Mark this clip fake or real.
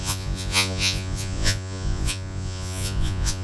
fake